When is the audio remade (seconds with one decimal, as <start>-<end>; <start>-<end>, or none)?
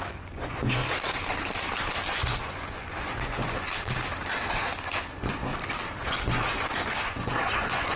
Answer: 0.0-0.8; 2.1-3.7; 4.4-5.5; 6.0-8.0